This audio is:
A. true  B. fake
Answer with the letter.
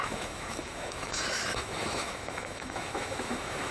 B